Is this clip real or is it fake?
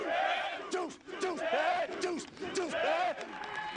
real